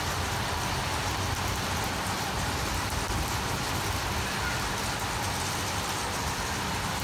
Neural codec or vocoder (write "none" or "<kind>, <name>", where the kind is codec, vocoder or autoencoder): none